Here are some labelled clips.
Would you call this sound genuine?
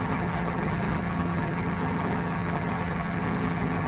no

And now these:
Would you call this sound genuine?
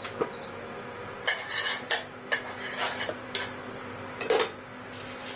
yes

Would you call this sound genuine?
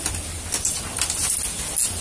yes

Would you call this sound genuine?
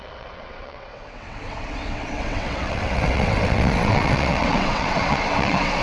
no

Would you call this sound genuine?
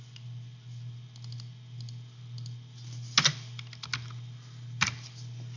yes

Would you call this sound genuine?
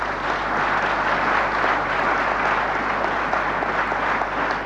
yes